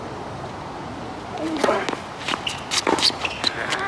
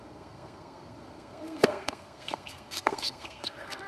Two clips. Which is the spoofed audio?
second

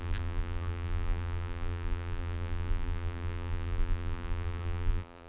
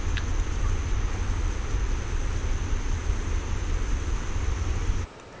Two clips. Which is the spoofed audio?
first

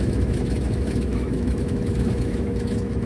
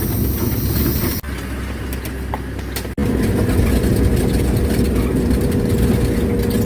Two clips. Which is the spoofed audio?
first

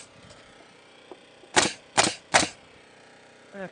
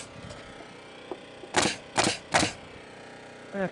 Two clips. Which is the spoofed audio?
first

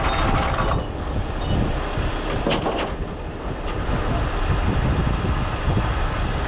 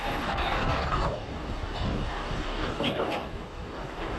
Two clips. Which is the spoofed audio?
second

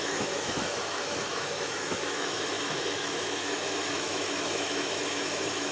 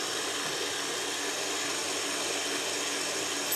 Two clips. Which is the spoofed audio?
first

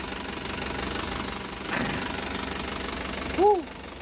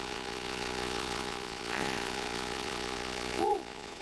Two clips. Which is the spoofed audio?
second